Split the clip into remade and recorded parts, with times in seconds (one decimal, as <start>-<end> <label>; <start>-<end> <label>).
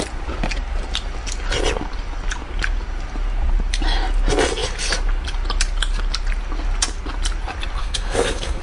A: 0.0-7.8 recorded; 7.8-8.6 remade